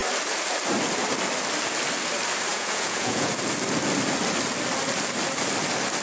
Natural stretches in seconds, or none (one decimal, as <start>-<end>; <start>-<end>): 0.0-2.5; 3.3-6.0